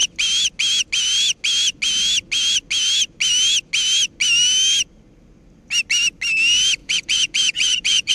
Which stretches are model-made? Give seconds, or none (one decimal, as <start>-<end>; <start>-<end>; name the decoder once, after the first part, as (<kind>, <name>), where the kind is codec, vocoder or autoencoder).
6.8-8.1 (vocoder, Vocos)